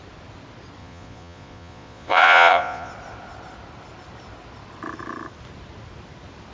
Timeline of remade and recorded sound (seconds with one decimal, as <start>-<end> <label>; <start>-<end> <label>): 0.0-0.8 recorded; 0.8-2.9 remade; 2.9-6.5 recorded